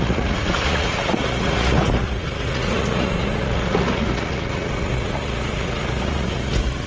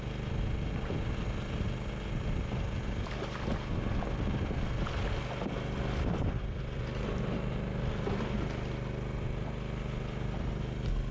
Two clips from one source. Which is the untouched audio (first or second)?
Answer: second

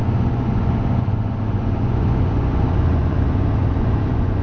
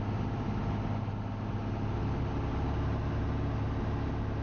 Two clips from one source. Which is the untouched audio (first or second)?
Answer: second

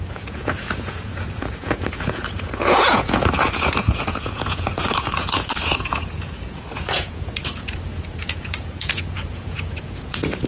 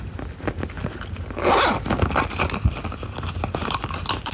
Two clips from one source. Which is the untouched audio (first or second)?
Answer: second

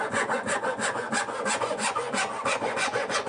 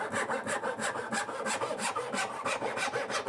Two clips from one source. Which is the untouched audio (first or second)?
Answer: second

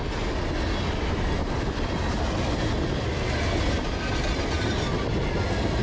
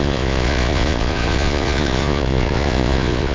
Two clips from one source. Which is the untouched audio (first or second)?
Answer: first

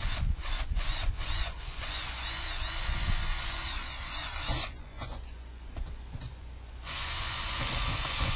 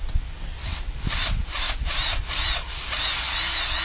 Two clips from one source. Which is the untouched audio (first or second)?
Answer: second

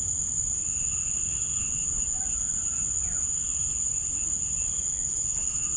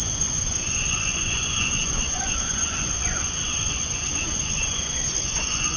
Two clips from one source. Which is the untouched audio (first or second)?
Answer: first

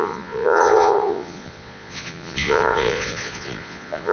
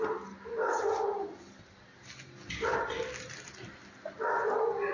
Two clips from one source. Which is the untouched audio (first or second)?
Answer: second